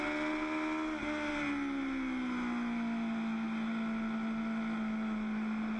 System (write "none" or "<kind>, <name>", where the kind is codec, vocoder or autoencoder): none